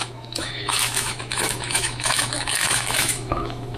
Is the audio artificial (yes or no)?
yes